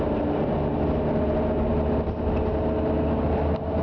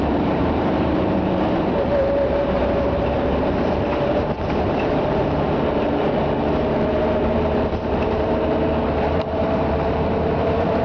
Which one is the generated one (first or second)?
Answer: second